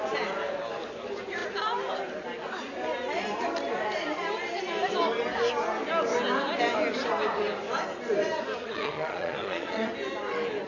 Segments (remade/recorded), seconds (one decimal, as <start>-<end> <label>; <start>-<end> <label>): 0.0-8.6 recorded; 8.6-9.9 remade; 9.9-10.7 recorded